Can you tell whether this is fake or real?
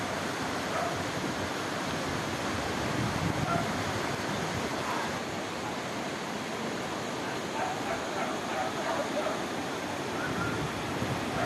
real